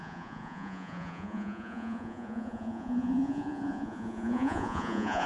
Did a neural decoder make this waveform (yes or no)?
yes